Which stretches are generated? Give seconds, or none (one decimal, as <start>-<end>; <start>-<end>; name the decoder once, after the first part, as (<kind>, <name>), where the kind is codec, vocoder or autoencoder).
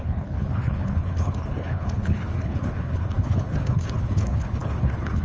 0.0-5.2 (codec, HILCodec)